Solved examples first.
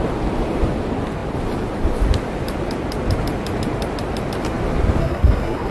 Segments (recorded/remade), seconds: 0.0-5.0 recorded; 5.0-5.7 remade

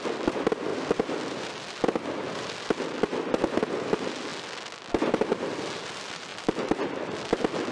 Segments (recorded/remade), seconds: 0.0-7.7 recorded

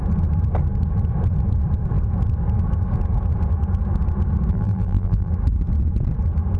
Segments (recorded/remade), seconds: 0.0-4.5 recorded; 4.5-5.3 remade; 5.3-6.6 recorded

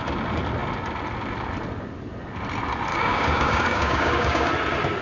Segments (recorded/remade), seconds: 0.0-2.9 recorded; 2.9-4.5 remade; 4.5-5.0 recorded

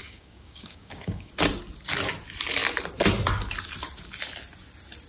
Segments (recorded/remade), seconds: 0.0-1.3 remade; 1.3-5.1 recorded

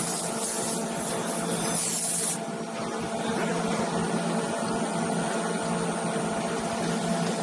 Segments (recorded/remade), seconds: 0.0-2.9 recorded; 2.9-3.8 remade; 3.8-7.4 recorded

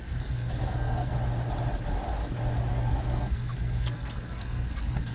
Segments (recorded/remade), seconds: 0.0-1.1 remade; 1.1-2.7 recorded; 2.7-5.1 remade